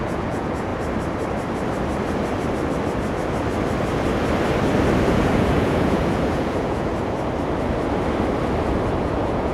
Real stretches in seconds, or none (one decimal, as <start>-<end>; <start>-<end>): 0.7-5.1; 6.9-9.0